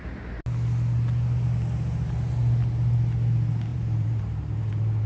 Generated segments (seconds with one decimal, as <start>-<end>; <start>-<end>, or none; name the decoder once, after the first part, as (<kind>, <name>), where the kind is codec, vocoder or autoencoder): 3.7-5.1 (vocoder, BigVGAN v2)